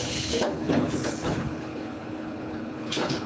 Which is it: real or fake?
fake